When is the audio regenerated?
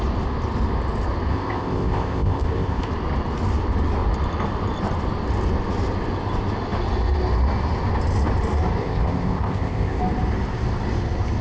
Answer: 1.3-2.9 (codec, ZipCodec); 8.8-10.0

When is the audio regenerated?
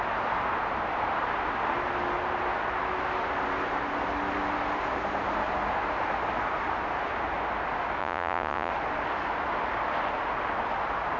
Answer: 8.0-8.7 (vocoder, Vocos)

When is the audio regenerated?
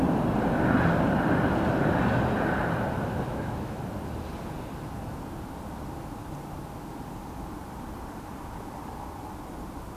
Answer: 3.3-3.8 (autoencoder, DAC-VAE)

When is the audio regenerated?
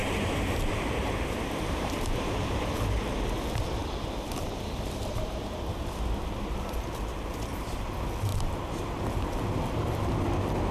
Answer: 0.0-2.7 (vocoder, BigVGAN v2); 3.8-7.7